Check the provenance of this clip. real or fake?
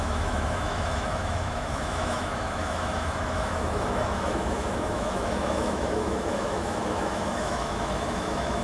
fake